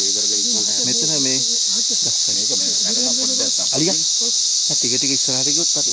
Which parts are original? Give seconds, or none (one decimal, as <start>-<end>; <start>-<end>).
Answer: 0.7-2.6